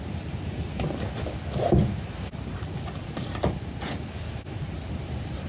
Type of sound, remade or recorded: recorded